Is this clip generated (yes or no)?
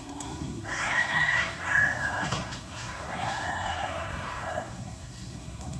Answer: yes